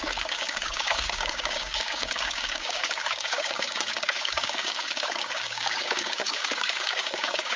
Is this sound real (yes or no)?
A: no